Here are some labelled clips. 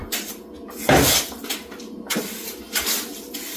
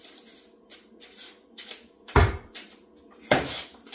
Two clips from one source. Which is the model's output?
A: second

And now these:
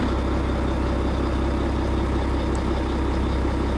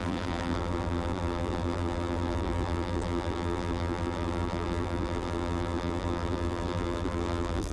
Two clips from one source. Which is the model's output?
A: second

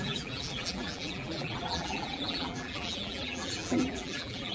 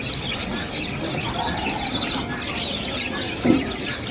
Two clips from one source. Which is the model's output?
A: first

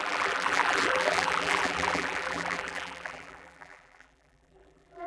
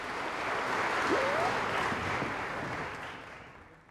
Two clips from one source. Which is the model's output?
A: first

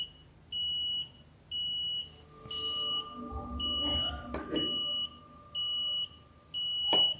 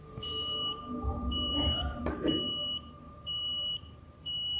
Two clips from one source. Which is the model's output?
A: second